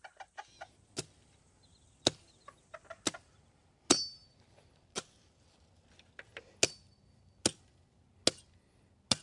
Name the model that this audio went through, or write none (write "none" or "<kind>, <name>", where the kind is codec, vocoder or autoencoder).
none